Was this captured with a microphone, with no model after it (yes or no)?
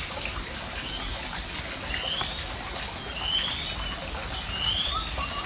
yes